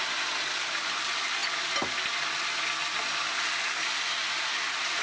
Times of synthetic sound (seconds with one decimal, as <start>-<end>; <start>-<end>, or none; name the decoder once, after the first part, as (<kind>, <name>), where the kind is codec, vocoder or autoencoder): none